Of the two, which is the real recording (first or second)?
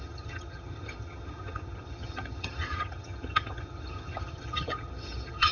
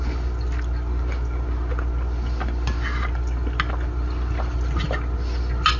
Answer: second